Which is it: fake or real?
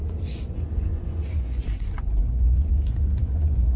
fake